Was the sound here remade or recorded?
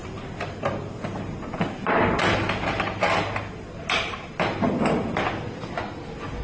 recorded